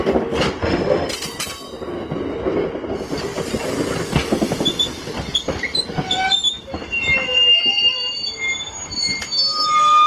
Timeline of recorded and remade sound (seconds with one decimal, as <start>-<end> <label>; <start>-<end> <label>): 0.0-0.6 recorded; 0.6-1.1 remade; 1.1-10.1 recorded